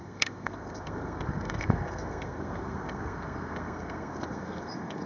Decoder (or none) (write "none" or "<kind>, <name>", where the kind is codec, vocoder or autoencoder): codec, SNAC